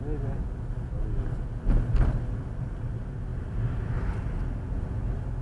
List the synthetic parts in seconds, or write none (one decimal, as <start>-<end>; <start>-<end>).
none